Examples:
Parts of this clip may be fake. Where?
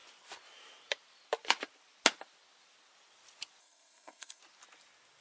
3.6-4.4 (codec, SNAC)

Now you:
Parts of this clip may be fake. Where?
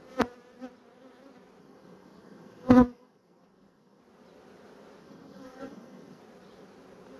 1.6-4.0 (codec, SNAC); 5.0-6.2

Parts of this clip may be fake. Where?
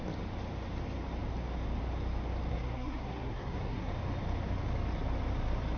2.5-3.9 (codec, SNAC)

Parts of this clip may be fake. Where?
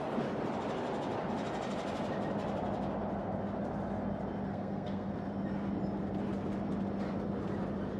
4.5-5.1 (codec, SNAC)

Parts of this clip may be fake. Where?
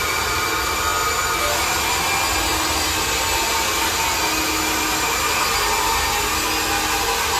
none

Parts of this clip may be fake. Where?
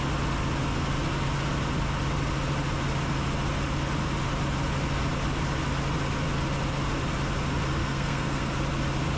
7.8-8.4 (codec, SNAC)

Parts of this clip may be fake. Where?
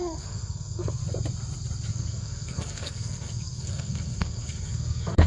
0.0-1.0 (codec, SNAC); 1.9-5.3